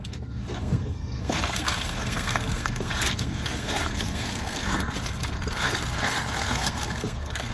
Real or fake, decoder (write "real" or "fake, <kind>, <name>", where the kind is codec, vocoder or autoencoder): fake, codec, SNAC